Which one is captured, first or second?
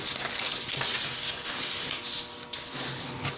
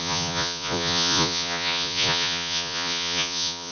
first